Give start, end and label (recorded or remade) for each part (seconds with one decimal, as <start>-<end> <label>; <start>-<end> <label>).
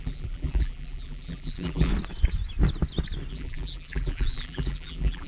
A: 0.0-1.9 remade; 1.9-3.3 recorded; 3.3-5.3 remade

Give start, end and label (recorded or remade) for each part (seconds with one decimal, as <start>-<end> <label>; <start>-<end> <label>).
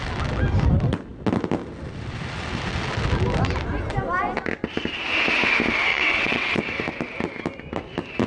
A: 0.0-5.9 recorded; 5.9-6.6 remade; 6.6-8.3 recorded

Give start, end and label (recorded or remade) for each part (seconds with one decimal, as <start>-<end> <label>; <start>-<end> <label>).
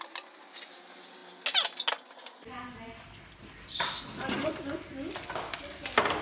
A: 0.0-6.2 recorded